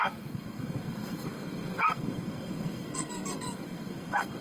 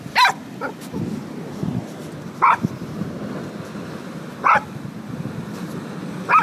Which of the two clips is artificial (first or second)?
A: first